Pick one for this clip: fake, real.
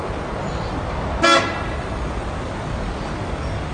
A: real